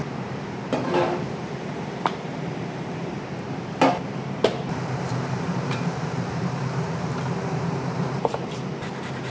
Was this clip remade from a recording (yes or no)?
yes